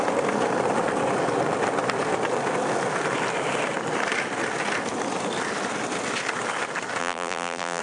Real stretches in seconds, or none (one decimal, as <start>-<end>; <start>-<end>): 0.0-7.0